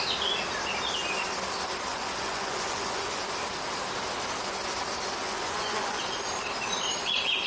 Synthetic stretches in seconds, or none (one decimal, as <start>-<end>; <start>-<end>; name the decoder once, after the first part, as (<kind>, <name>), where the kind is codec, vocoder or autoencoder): 1.9-3.2 (vocoder, Vocos); 5.2-6.0

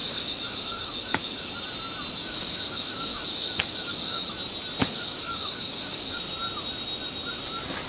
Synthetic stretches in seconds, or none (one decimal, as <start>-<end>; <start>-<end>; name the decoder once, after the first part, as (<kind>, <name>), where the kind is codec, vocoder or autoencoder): 0.0-1.5 (codec, DAC); 2.2-4.3; 4.8-6.2

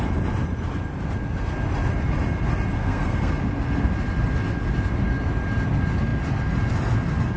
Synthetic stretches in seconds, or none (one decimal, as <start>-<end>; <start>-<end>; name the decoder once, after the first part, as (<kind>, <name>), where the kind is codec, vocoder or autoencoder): 2.8-3.3 (codec, SNAC)

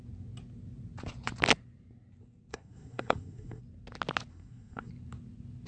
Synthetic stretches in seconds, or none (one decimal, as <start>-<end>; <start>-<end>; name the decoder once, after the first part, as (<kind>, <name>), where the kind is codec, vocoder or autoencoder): 2.5-3.6 (codec, SNAC); 4.3-4.9

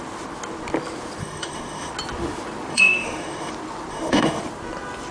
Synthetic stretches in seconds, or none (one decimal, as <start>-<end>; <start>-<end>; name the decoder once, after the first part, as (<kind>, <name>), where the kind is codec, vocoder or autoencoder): 1.2-1.9 (autoencoder, DAC-VAE); 2.7-3.5; 3.9-4.4